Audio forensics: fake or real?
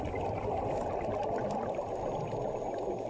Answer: real